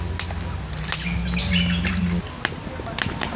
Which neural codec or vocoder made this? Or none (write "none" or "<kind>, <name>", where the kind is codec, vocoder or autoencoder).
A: none